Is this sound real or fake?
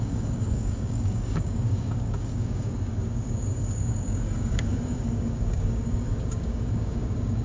fake